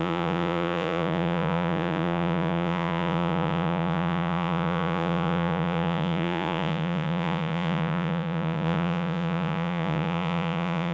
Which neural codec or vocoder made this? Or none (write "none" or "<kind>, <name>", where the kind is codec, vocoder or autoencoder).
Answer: vocoder, Vocos